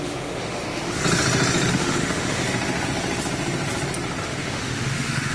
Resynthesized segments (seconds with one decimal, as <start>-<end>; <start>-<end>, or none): 0.0-1.0; 1.7-2.4; 4.2-5.3